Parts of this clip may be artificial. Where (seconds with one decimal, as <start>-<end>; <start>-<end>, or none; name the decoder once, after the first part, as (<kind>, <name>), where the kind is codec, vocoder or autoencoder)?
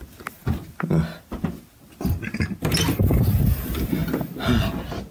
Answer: none